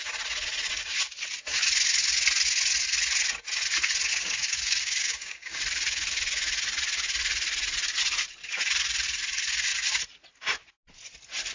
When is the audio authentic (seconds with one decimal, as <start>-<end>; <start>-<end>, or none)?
0.0-4.1; 5.6-11.5